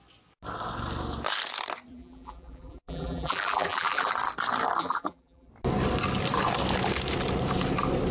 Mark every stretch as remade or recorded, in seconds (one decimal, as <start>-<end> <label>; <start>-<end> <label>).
0.0-1.9 recorded; 1.9-4.1 remade; 4.1-4.8 recorded; 4.8-5.5 remade; 5.5-8.1 recorded